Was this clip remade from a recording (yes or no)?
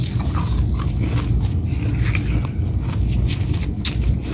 no